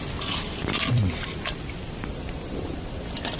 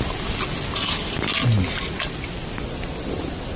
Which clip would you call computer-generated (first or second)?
first